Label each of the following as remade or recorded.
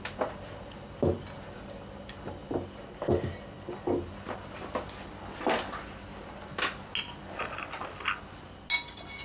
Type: recorded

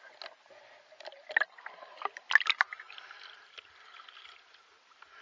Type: recorded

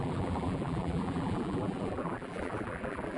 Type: remade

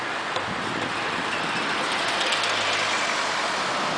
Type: recorded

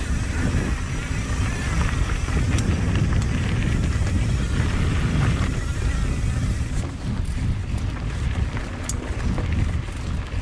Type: recorded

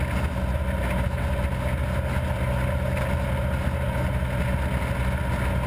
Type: recorded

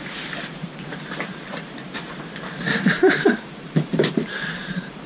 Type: remade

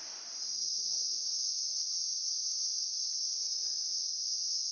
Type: recorded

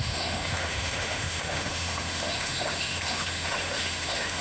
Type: remade